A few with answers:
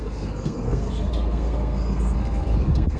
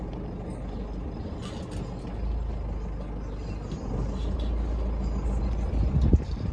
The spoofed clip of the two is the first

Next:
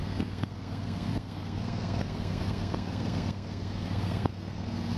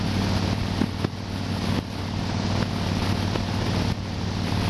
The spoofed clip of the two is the first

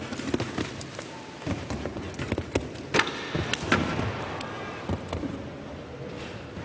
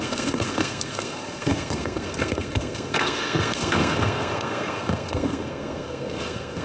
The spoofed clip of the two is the second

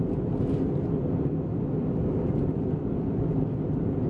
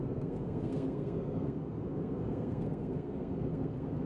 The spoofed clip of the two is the second